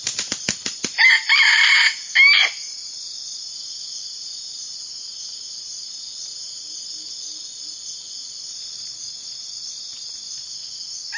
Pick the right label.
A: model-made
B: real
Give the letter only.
B